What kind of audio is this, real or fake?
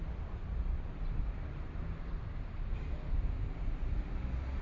real